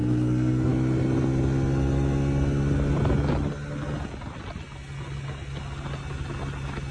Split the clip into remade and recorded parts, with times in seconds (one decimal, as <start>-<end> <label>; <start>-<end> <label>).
0.0-0.7 remade; 0.7-6.9 recorded

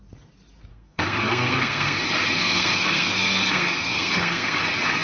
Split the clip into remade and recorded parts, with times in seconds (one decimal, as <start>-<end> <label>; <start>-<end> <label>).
0.0-0.7 recorded; 0.7-2.0 remade; 2.0-2.4 recorded; 2.4-4.6 remade; 4.6-5.0 recorded

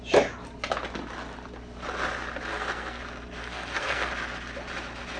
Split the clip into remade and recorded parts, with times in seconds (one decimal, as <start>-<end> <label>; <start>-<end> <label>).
0.0-2.5 recorded; 2.5-3.0 remade; 3.0-3.4 recorded; 3.4-4.1 remade; 4.1-5.2 recorded

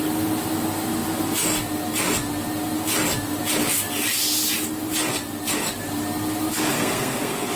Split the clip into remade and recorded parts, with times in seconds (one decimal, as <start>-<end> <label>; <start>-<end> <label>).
0.0-6.5 recorded; 6.5-7.6 remade